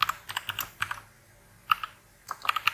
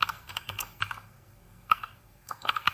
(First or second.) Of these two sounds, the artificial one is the second